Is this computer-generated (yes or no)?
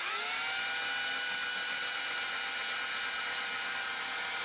no